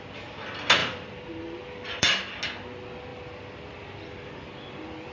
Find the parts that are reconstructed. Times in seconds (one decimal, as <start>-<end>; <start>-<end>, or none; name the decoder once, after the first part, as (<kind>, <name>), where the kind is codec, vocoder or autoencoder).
0.8-2.4 (vocoder, BigVGAN v2); 3.1-4.3